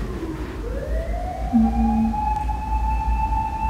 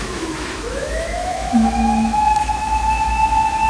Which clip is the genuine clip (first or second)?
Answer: first